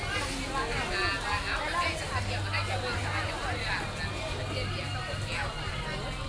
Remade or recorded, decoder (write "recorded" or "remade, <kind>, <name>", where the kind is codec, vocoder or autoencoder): recorded